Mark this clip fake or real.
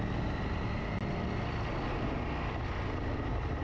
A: real